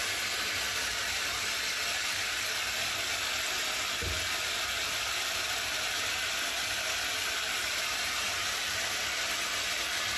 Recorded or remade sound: recorded